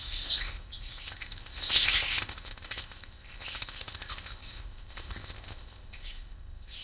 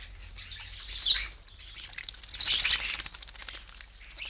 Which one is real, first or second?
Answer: second